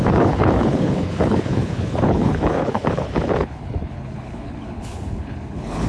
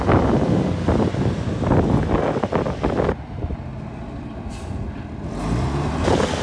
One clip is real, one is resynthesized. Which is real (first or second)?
second